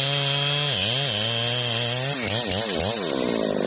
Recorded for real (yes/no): yes